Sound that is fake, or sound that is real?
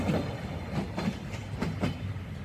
real